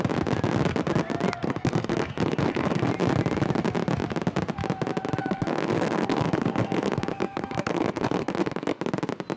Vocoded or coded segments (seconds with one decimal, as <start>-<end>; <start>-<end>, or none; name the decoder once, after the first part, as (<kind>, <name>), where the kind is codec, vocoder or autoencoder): 1.4-2.9 (codec, SNAC); 5.2-8.8